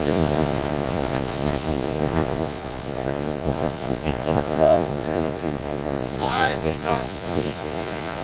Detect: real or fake fake